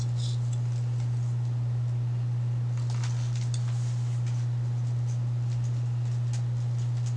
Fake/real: real